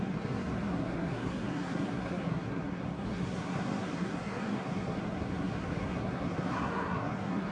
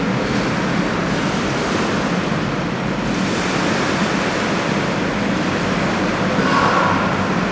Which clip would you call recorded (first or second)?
second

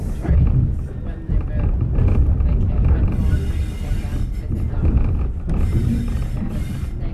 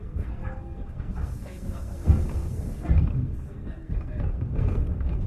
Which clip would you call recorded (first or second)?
first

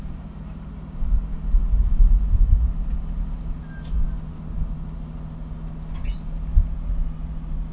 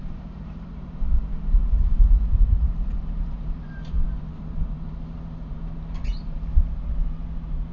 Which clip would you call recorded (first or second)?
first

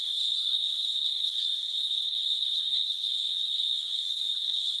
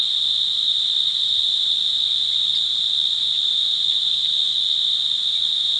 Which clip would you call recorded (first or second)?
second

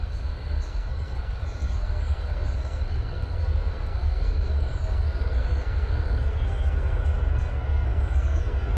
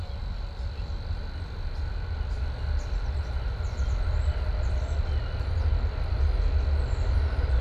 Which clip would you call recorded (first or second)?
second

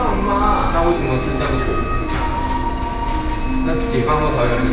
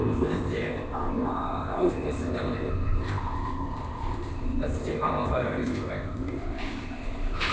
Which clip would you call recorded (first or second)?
first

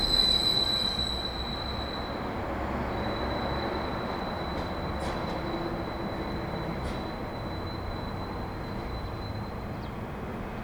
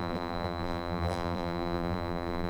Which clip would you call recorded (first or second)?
first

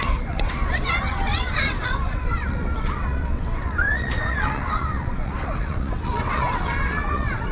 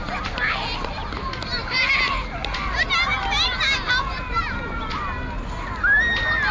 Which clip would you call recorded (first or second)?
second